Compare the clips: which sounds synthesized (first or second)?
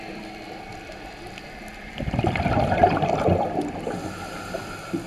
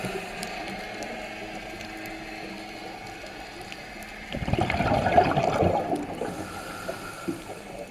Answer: first